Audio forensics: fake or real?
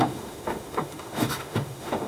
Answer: fake